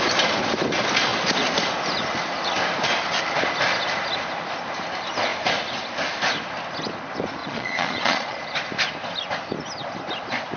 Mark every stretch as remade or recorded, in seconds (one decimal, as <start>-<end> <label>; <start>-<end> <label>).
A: 0.0-7.4 recorded; 7.4-8.4 remade; 8.4-10.6 recorded